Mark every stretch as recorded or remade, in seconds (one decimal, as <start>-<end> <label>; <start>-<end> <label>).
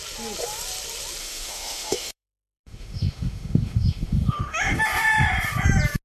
0.0-1.2 recorded; 1.2-4.8 remade; 4.8-6.0 recorded